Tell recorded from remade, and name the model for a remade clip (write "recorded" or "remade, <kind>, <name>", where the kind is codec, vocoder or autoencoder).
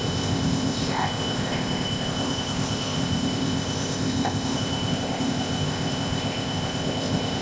remade, codec, ZipCodec